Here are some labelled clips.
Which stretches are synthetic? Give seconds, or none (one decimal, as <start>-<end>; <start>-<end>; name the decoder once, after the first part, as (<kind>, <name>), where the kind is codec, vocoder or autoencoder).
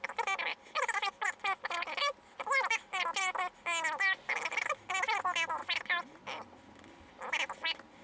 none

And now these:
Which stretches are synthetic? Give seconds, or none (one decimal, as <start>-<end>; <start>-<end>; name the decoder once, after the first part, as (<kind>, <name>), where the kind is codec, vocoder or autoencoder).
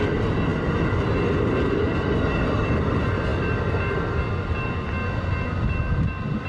none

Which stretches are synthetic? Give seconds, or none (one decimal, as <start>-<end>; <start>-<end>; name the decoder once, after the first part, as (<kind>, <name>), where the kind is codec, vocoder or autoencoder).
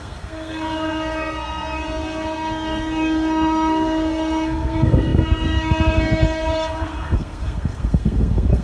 0.0-8.6 (codec, SNAC)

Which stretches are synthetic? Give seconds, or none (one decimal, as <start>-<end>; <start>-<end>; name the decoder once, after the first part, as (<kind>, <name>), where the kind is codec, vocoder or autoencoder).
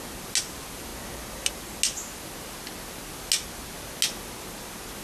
none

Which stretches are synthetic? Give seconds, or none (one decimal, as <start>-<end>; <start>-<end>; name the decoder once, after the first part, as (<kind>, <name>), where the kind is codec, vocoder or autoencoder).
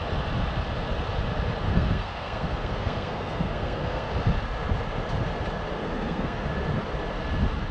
1.6-4.1 (codec, SNAC); 5.7-6.5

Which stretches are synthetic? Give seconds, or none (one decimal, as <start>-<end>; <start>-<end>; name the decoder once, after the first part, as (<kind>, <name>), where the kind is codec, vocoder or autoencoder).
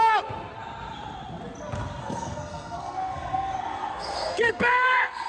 2.0-5.3 (codec, SNAC)